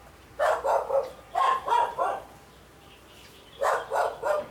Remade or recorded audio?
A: remade